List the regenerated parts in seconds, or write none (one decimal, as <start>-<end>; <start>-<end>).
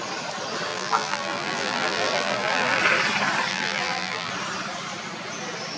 0.7-2.8; 3.5-4.3